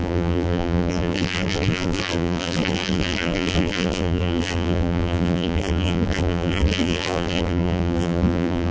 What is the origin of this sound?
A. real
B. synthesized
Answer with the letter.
B